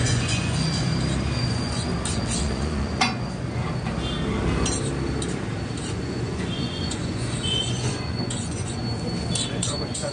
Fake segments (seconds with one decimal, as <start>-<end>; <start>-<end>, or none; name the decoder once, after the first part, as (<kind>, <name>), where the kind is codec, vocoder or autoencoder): 0.0-0.9 (vocoder, Vocos); 1.5-1.9; 2.4-3.6; 5.9-8.8; 9.5-10.1

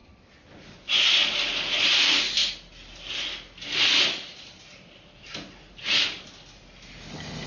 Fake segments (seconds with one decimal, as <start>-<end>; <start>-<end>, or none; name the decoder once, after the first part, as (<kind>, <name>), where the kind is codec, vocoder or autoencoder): none